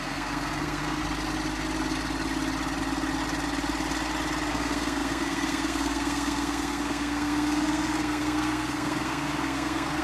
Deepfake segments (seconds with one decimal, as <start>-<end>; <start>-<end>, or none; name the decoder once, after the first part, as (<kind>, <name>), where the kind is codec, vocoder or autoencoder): 0.0-1.0 (codec, SNAC); 4.5-10.0